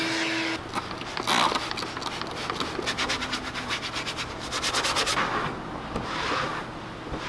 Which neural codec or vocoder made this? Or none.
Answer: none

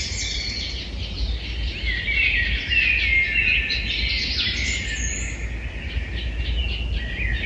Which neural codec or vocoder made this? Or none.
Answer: none